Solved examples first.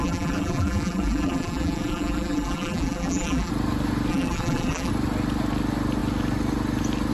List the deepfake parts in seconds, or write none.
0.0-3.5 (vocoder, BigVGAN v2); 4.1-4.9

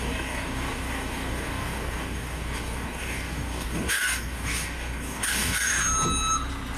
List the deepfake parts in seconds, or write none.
0.0-5.8 (codec, DAC)

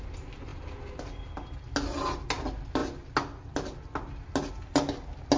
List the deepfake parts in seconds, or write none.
none

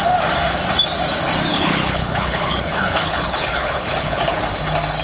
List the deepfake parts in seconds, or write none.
1.5-4.4 (codec, HILCodec)

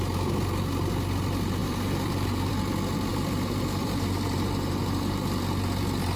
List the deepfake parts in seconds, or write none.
1.6-2.5 (vocoder, BigVGAN v2); 3.1-5.2

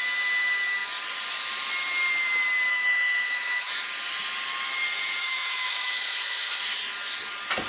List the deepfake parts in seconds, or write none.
2.7-3.7 (autoencoder, DAC-VAE); 5.2-6.6